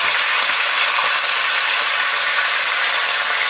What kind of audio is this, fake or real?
real